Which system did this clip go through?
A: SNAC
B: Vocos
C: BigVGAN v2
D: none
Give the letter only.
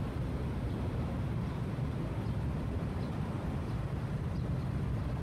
C